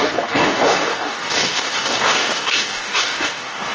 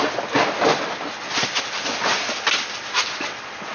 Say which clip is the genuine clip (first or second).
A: second